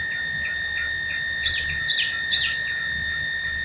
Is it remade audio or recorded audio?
recorded